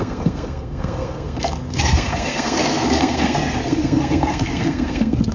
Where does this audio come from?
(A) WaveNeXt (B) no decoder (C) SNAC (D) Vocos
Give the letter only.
C